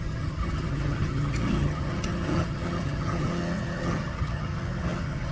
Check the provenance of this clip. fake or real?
fake